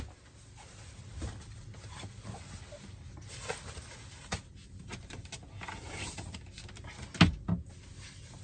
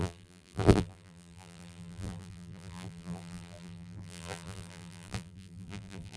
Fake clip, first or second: second